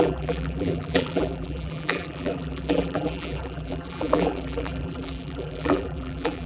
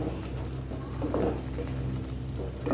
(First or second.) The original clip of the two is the second